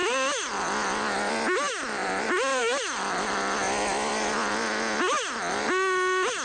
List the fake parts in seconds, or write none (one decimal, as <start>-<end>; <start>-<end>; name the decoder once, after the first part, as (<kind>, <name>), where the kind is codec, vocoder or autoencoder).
none